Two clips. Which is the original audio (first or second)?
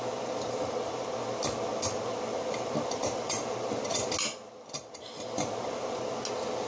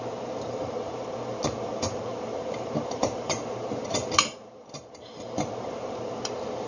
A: first